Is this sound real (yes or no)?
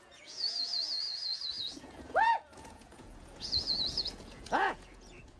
no